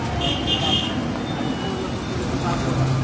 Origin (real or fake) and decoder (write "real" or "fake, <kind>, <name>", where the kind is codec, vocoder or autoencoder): real